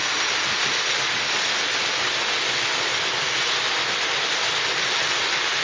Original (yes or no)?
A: yes